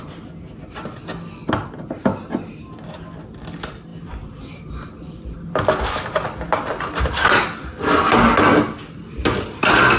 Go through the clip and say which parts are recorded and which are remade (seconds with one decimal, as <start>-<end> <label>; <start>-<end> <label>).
0.0-10.0 recorded

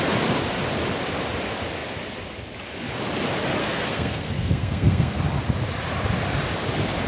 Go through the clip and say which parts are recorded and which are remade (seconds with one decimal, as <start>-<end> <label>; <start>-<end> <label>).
0.0-3.6 recorded; 3.6-5.2 remade; 5.2-7.1 recorded

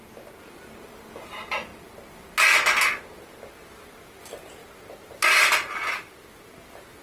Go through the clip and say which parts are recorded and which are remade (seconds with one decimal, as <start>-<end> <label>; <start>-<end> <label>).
0.0-7.0 recorded